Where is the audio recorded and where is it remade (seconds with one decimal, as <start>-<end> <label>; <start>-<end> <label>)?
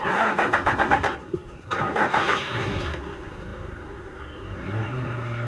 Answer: 0.0-5.5 remade